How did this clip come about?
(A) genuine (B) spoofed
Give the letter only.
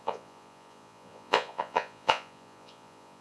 B